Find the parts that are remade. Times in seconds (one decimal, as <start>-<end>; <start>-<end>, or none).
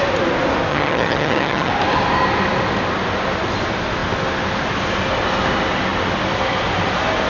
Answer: 0.7-1.7